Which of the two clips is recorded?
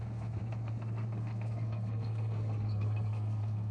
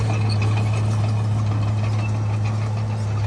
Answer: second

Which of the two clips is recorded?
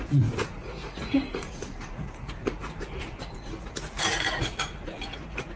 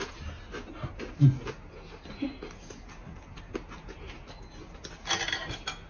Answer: second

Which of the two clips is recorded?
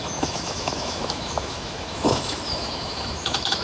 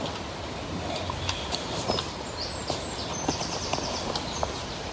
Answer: second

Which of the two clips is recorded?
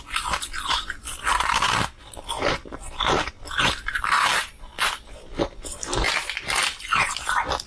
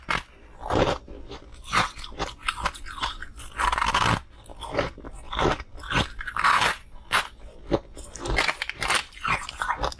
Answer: second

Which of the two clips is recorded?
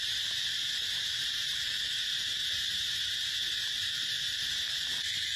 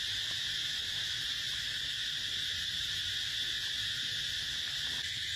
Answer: second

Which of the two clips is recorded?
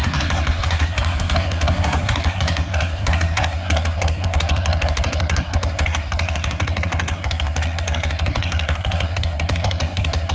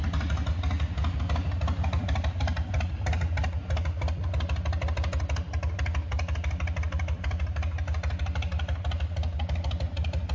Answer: second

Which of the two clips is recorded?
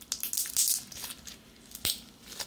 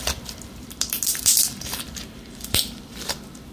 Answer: first